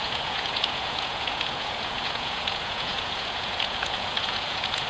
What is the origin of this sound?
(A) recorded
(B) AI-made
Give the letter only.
B